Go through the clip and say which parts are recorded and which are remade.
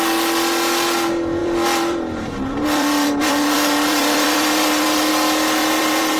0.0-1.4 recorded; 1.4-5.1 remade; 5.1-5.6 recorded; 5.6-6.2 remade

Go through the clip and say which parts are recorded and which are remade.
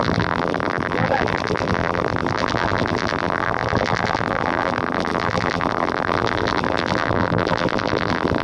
0.0-8.4 remade